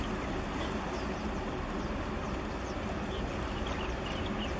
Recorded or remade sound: recorded